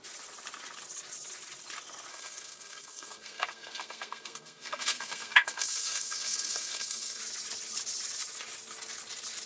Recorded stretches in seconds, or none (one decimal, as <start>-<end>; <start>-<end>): 0.0-2.1; 7.2-9.5